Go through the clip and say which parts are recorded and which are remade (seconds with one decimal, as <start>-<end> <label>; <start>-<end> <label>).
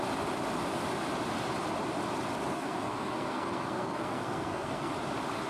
0.0-2.5 recorded; 2.5-4.9 remade; 4.9-5.5 recorded